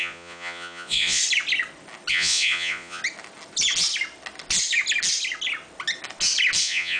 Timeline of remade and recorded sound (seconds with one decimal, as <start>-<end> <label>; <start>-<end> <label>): 0.0-1.2 remade; 1.2-2.1 recorded; 2.1-3.0 remade; 3.0-6.6 recorded; 6.6-7.0 remade